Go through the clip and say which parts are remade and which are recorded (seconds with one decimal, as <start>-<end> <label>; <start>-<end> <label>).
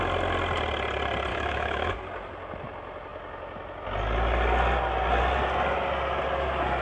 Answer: 0.0-1.3 recorded; 1.3-1.9 remade; 1.9-6.8 recorded